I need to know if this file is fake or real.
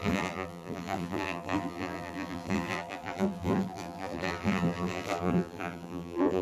fake